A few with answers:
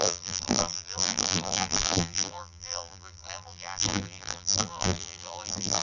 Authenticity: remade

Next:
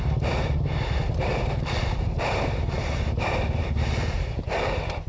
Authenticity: remade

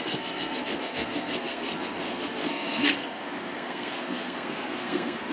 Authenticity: remade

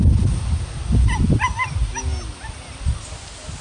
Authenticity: recorded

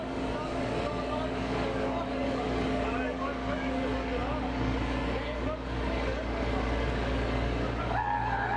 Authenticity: remade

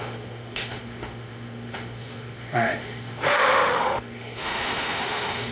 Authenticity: remade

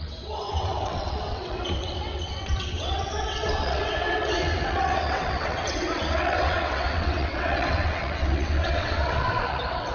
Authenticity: remade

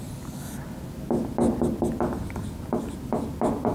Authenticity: recorded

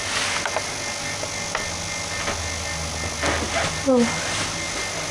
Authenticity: recorded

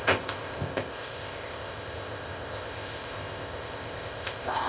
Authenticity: remade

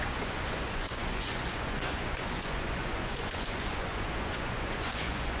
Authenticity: remade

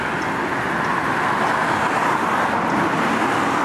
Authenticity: recorded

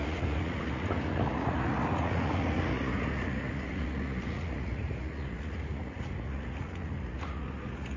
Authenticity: remade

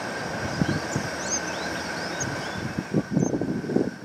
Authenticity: recorded